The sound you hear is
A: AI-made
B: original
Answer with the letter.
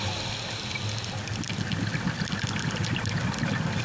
B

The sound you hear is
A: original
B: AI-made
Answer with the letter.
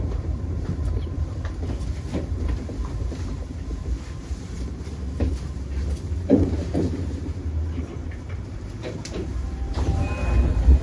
B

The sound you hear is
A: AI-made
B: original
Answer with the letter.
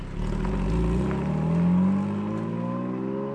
B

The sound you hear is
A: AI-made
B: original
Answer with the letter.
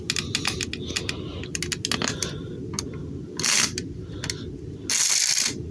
B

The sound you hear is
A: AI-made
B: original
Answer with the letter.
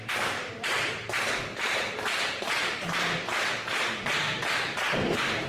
A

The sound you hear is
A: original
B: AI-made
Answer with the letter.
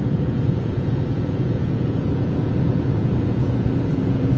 B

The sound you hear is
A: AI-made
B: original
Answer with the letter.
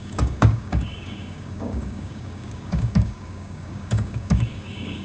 A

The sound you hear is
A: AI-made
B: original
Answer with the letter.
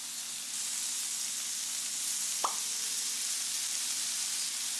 B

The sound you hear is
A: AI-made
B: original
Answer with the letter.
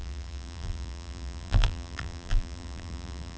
A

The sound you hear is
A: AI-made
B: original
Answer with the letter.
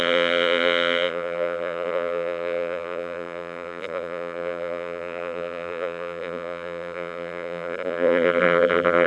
A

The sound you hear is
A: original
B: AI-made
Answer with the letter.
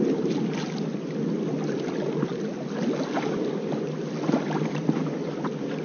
A